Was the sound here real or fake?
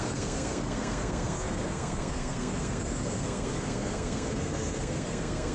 fake